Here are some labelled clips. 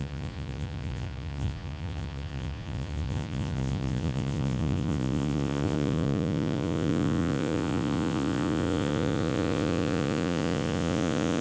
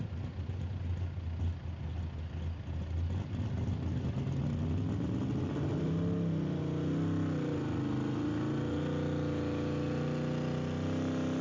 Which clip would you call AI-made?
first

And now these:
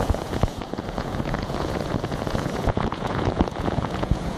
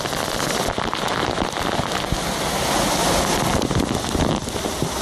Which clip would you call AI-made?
first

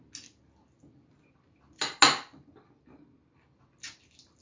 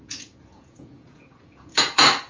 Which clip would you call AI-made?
second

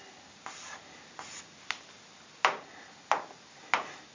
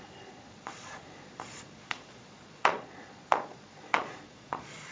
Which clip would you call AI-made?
second